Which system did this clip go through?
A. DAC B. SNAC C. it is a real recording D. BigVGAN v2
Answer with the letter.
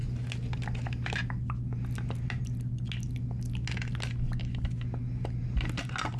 C